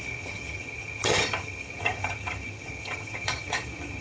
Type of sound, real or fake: fake